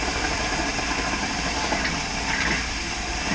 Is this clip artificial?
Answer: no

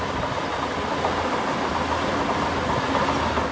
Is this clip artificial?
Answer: no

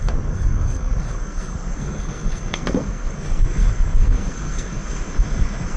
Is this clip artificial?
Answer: yes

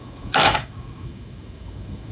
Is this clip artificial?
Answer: yes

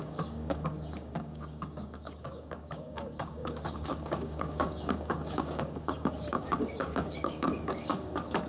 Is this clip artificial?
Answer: yes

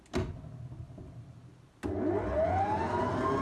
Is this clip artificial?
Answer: no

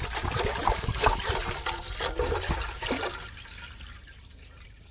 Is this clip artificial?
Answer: no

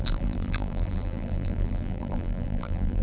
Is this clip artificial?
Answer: yes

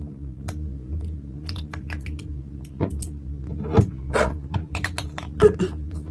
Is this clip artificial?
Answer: yes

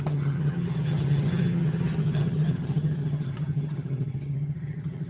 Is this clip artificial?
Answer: yes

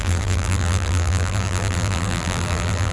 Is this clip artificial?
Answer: yes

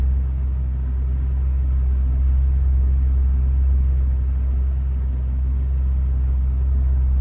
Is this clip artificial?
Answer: no